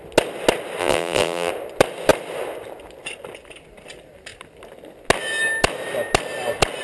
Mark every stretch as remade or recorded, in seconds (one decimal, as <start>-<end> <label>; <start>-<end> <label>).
0.0-0.8 recorded; 0.8-1.5 remade; 1.5-6.8 recorded